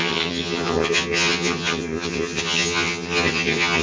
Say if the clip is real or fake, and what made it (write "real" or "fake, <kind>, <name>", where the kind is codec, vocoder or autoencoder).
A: fake, vocoder, HiFi-GAN